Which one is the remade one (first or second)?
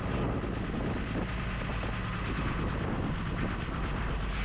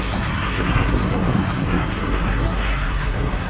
second